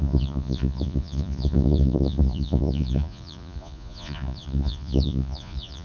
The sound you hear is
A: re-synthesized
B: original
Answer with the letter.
A